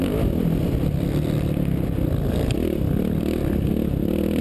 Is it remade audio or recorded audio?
recorded